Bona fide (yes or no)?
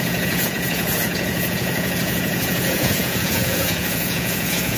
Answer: no